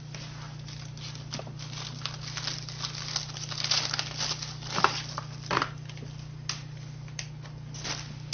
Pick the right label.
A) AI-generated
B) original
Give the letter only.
B